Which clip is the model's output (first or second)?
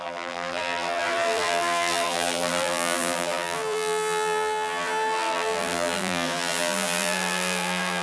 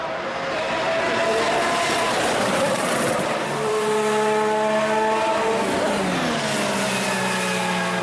first